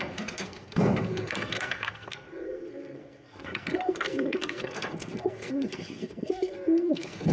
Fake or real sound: fake